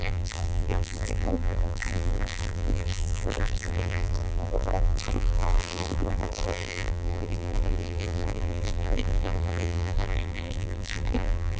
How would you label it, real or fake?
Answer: fake